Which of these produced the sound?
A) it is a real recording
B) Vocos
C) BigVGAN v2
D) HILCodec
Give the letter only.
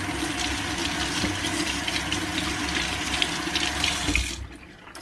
A